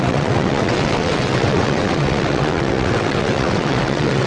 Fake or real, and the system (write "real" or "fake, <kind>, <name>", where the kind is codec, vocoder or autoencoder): fake, vocoder, WaveNeXt